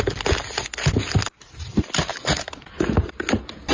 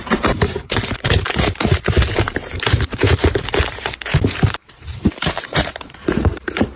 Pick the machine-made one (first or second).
second